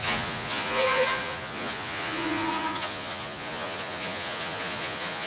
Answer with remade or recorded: remade